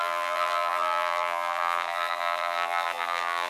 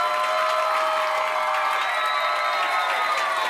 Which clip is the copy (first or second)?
first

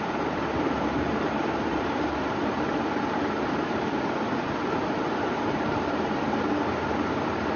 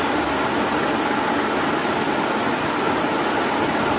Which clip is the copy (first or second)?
first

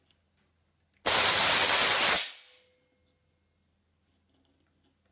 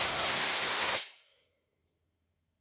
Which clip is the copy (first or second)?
second